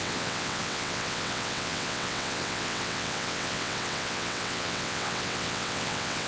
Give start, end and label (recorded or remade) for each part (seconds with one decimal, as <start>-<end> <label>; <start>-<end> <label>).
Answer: 0.0-6.3 remade